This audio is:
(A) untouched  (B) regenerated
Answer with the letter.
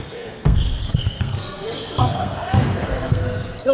B